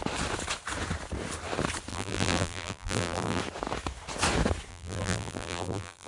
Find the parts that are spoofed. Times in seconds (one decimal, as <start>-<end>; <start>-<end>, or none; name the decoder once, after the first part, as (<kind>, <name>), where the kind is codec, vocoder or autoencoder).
1.9-3.4 (vocoder, BigVGAN v2); 4.7-6.1

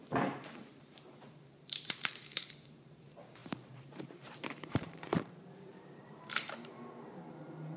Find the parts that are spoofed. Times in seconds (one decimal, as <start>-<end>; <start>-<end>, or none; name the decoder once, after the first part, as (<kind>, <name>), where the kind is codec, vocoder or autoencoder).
0.0-7.8 (vocoder, BigVGAN v2)